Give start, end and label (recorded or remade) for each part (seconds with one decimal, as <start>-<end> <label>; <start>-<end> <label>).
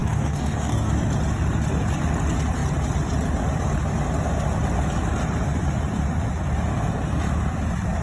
0.0-0.9 remade; 0.9-8.0 recorded